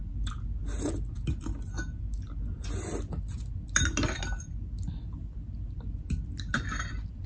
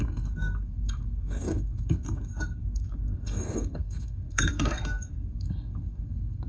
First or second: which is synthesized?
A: second